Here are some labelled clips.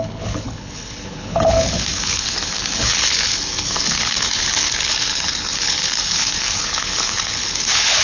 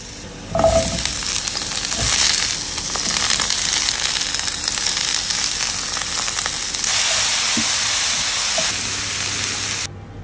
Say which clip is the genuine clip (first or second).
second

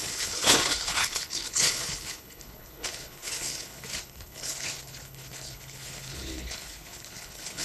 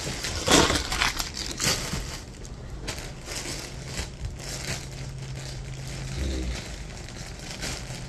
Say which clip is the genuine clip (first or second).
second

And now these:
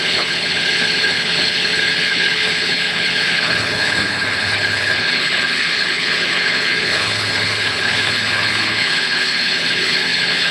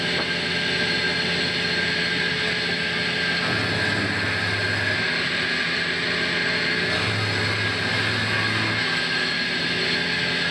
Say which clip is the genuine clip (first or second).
second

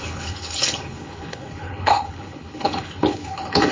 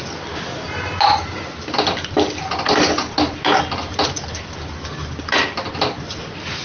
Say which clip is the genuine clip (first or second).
second